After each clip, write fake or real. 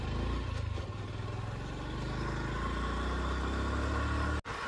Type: real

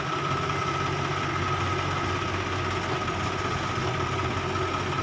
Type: real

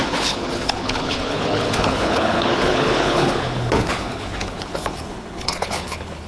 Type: fake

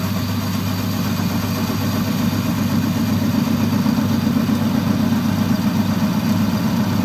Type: real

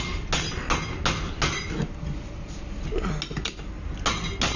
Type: real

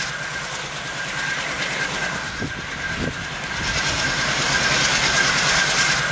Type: real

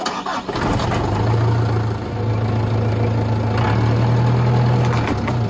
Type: real